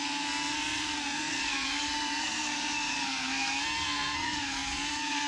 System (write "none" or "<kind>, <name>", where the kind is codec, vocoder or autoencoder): codec, SNAC